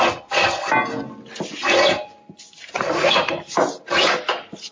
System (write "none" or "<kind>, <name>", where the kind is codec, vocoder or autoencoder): none